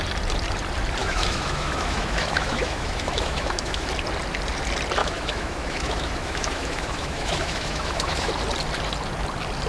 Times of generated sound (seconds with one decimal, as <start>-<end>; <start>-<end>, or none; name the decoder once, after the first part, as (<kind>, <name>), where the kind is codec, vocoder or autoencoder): 1.0-3.9 (autoencoder, DAC-VAE); 5.0-8.3